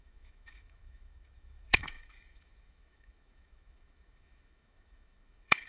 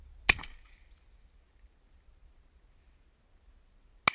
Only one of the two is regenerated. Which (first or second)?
first